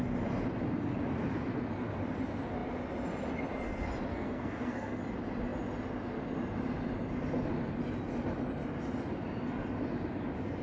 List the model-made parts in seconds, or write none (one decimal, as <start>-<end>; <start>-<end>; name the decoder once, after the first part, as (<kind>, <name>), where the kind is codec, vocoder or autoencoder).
4.1-5.0 (codec, SNAC)